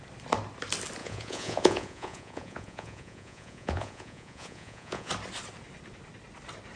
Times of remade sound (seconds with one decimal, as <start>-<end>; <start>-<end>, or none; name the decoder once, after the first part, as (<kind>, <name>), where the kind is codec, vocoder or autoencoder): 1.0-5.1 (vocoder, Vocos)